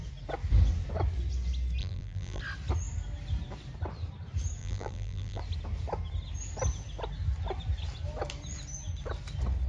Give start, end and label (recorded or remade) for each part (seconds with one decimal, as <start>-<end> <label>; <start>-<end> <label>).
0.0-1.8 recorded; 1.8-2.4 remade; 2.4-4.6 recorded; 4.6-5.4 remade; 5.4-9.7 recorded